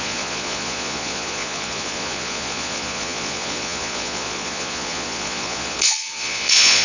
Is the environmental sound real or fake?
fake